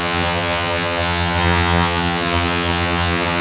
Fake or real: fake